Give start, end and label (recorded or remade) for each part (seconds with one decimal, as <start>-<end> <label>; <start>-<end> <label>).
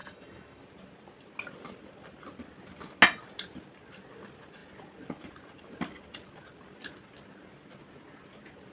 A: 0.0-0.6 remade; 0.6-8.7 recorded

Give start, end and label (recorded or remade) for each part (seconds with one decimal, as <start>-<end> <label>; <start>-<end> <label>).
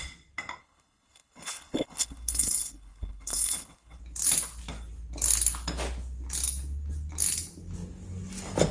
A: 0.0-0.6 recorded; 0.6-4.0 remade; 4.0-8.7 recorded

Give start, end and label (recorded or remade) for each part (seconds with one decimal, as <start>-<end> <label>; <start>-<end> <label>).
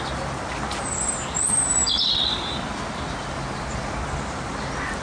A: 0.0-5.0 recorded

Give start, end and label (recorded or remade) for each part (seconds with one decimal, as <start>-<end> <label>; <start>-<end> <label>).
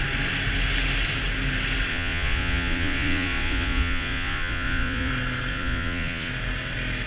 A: 0.0-1.9 recorded; 1.9-5.1 remade; 5.1-5.5 recorded; 5.5-6.3 remade; 6.3-7.1 recorded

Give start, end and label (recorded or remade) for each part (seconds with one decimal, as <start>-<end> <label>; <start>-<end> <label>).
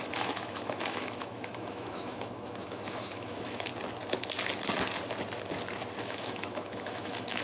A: 0.0-3.7 remade; 3.7-6.0 recorded; 6.0-7.4 remade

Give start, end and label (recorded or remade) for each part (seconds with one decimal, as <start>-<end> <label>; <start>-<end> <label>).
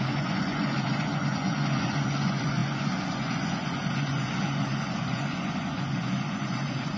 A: 0.0-7.0 remade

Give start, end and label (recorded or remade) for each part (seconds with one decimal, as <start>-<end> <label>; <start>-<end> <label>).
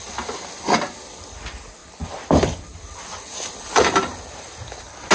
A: 0.0-5.1 recorded